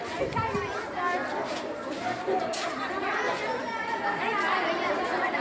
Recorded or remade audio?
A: recorded